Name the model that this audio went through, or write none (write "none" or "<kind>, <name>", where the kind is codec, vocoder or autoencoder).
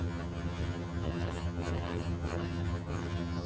vocoder, HiFi-GAN